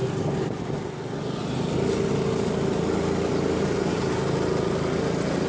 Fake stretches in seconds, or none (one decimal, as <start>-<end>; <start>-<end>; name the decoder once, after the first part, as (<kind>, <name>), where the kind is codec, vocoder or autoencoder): none